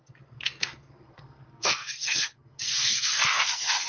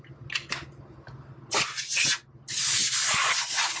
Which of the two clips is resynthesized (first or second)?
first